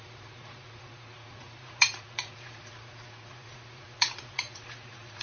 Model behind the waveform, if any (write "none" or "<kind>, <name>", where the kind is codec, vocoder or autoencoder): vocoder, Vocos